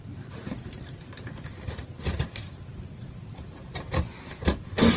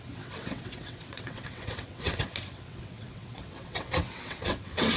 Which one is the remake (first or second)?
second